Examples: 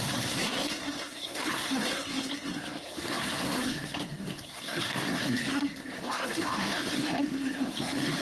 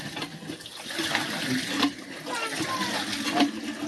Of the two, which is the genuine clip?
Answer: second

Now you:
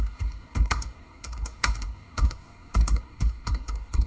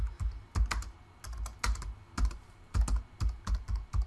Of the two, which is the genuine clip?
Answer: second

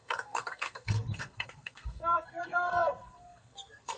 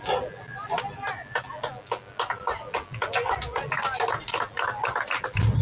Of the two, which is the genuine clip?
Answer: second